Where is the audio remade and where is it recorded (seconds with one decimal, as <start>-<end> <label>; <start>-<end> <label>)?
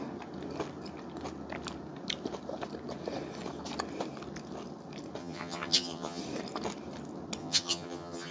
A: 0.0-5.2 recorded; 5.2-6.2 remade; 6.2-7.4 recorded; 7.4-8.3 remade